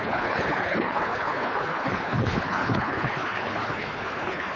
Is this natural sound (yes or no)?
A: no